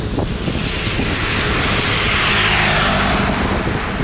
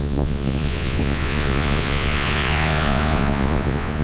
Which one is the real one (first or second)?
first